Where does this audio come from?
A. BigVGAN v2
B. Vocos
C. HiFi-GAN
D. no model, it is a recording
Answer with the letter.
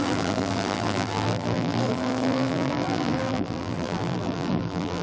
A